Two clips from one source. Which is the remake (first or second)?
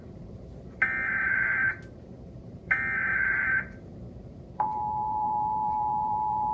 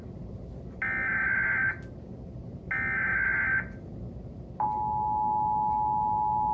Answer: first